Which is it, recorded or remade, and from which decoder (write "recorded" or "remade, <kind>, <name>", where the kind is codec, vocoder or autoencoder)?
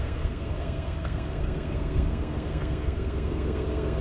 remade, codec, SNAC